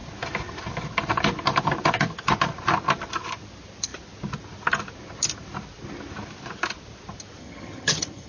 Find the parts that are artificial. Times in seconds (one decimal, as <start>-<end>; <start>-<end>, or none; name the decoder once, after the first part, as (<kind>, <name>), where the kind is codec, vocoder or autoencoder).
7.4-8.3 (vocoder, HiFi-GAN)